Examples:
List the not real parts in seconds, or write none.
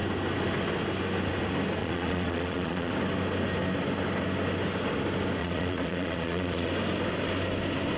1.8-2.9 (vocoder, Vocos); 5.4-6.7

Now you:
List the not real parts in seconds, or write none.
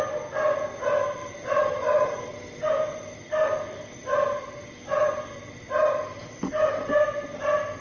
none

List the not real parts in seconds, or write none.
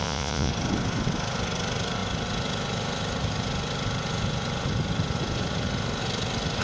0.0-0.5 (vocoder, Vocos)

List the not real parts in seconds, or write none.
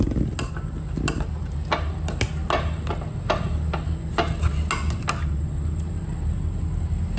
none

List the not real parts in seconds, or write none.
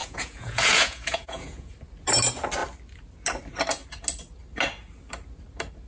0.0-1.7 (vocoder, Vocos)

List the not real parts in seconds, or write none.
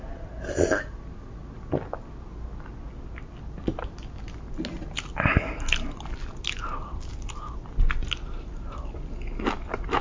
none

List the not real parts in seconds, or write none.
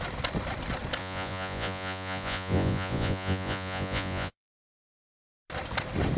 1.0-4.7 (vocoder, Vocos)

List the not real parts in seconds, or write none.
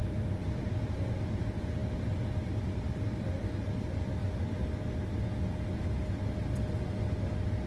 none